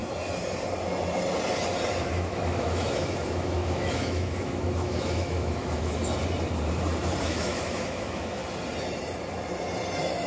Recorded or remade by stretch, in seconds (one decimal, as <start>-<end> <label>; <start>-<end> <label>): 0.0-2.0 recorded; 2.0-6.0 remade; 6.0-7.2 recorded; 7.2-8.4 remade; 8.4-10.3 recorded